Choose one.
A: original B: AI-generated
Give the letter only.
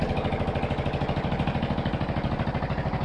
A